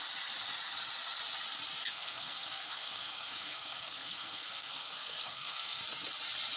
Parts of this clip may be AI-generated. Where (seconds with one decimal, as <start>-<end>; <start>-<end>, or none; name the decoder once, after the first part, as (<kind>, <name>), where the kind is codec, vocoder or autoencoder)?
1.8-5.8 (codec, SNAC)